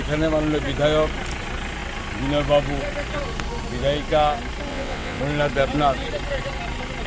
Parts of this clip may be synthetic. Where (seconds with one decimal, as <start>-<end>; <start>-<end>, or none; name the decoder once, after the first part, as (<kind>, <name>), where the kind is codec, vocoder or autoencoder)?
4.7-5.2 (vocoder, WaveNeXt)